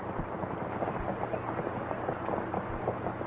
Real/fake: real